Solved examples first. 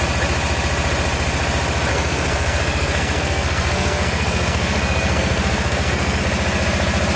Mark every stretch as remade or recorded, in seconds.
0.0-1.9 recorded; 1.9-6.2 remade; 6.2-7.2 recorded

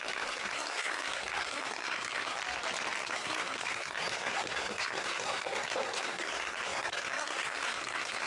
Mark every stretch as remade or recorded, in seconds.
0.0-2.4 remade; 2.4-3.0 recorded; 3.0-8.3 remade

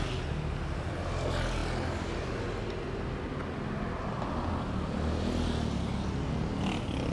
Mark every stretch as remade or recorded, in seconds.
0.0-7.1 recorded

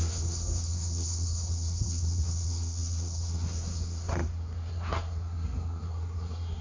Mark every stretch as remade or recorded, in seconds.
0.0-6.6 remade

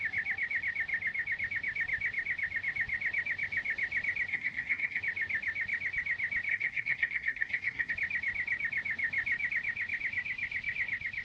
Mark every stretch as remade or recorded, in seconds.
0.0-4.3 recorded; 4.3-5.0 remade; 5.0-6.5 recorded; 6.5-7.9 remade; 7.9-11.2 recorded

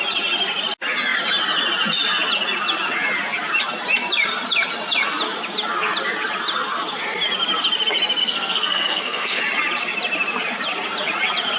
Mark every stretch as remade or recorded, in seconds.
0.0-8.2 recorded; 8.2-9.4 remade; 9.4-11.6 recorded

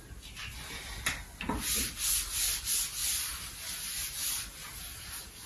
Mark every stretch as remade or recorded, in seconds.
0.0-5.5 recorded